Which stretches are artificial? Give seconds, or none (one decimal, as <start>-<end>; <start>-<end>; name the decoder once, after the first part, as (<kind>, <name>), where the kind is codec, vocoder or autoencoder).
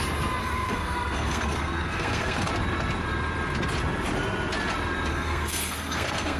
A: 0.4-2.5 (codec, SNAC); 5.1-6.4